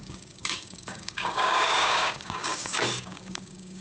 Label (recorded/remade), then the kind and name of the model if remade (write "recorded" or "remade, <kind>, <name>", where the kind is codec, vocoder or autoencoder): remade, codec, DAC